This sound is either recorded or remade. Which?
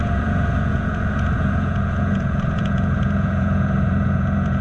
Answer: remade